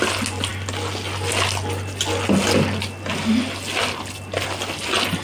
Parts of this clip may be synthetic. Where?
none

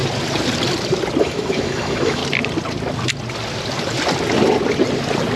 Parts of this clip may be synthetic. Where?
1.2-2.2

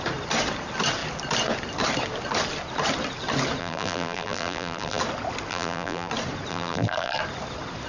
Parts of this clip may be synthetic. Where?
3.6-5.0; 5.5-6.1; 6.5-7.2